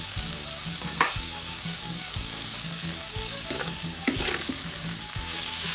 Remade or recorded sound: remade